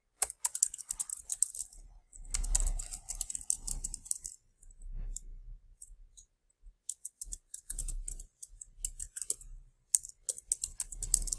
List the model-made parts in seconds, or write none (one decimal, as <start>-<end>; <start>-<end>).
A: 1.1-1.7